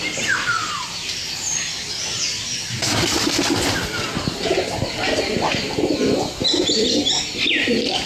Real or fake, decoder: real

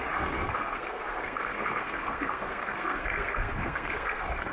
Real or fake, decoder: fake, codec, SNAC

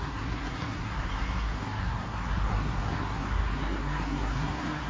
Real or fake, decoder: fake, codec, SNAC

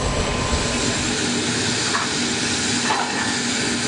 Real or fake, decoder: real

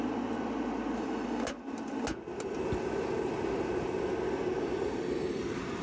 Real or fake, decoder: real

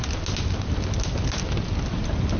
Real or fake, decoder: real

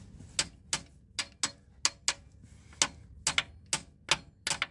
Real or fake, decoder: real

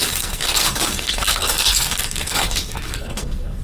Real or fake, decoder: fake, codec, SNAC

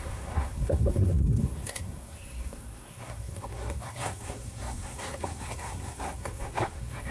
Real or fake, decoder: fake, codec, SNAC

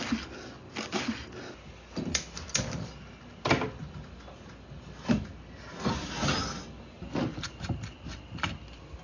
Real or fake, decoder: real